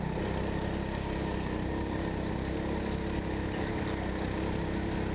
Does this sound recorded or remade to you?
recorded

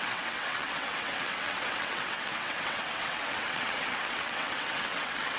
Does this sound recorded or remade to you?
remade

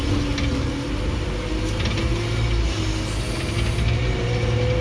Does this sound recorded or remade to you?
recorded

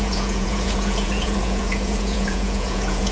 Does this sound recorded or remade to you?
remade